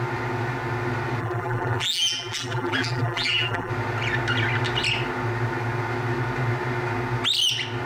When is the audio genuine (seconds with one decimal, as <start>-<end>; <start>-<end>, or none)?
0.0-1.2; 3.7-7.9